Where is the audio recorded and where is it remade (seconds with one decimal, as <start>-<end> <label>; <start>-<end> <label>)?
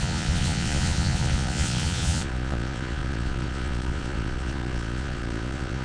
0.0-5.8 remade